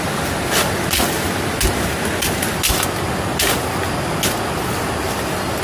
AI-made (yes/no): no